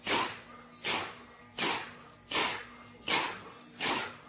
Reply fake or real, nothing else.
real